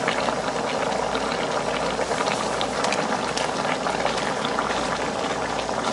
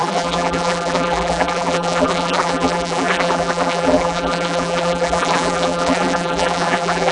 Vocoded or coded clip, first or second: second